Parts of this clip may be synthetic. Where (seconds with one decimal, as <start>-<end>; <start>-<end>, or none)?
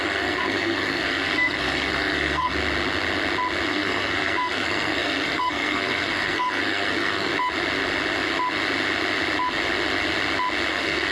0.0-2.5; 3.7-7.3; 10.7-11.1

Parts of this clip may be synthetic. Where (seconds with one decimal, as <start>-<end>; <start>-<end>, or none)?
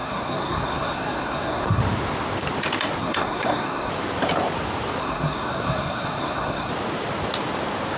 0.0-1.8; 3.0-3.9; 5.0-6.7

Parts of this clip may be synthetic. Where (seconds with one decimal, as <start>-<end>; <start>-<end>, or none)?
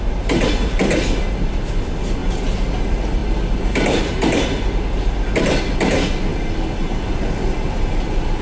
none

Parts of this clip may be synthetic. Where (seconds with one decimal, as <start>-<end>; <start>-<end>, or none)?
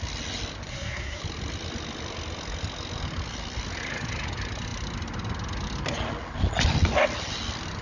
0.7-1.2